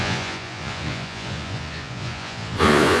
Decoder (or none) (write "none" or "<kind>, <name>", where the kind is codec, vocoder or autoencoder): vocoder, Vocos